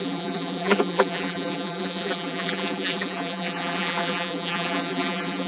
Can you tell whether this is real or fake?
fake